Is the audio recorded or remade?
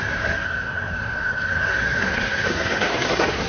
remade